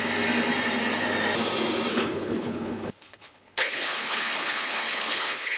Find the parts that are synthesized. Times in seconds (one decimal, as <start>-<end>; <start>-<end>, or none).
1.9-5.6